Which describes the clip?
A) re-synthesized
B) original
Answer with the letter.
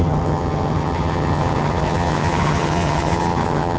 A